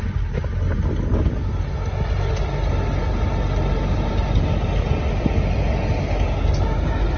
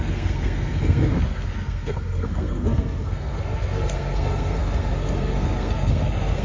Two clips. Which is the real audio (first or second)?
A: first